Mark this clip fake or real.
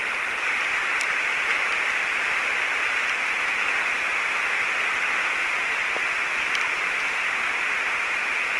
real